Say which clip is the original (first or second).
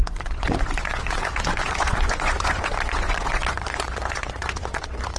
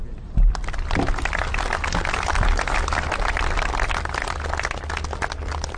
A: second